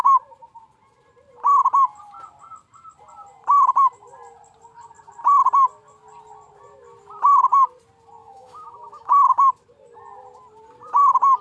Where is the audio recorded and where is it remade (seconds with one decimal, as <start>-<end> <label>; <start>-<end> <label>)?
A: 0.0-8.2 recorded; 8.2-9.5 remade; 9.5-11.4 recorded